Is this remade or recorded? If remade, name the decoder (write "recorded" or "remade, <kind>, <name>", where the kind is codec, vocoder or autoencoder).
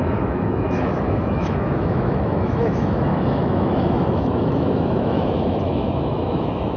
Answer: remade, autoencoder, DAC-VAE